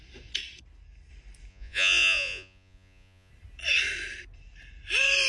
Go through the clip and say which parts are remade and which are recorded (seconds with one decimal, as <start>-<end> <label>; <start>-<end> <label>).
0.0-1.5 recorded; 1.5-3.3 remade; 3.3-5.3 recorded

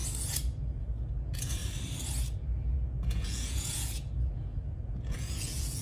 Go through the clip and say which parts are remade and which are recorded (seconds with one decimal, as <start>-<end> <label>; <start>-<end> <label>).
0.0-0.6 recorded; 0.6-1.6 remade; 1.6-2.7 recorded; 2.7-5.8 remade

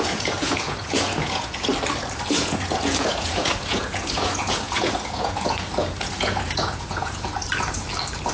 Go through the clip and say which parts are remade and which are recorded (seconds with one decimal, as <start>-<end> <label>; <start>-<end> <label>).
0.0-1.7 remade; 1.7-2.4 recorded; 2.4-7.3 remade; 7.3-8.3 recorded

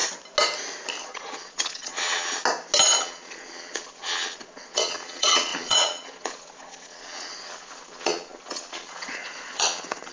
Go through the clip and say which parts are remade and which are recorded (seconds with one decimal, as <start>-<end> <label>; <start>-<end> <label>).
0.0-1.0 recorded; 1.0-2.4 remade; 2.4-3.0 recorded; 3.0-10.1 remade

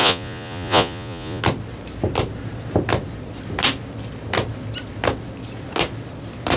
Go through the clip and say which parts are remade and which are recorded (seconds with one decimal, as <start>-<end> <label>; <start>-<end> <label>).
0.0-1.4 remade; 1.4-6.6 recorded

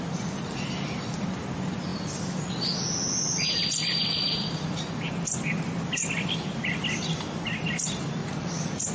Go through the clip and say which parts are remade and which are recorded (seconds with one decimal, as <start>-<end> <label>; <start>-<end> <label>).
0.0-8.2 recorded; 8.2-8.9 remade